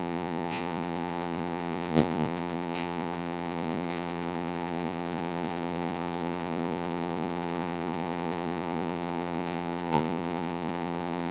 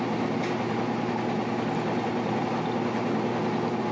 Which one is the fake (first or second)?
first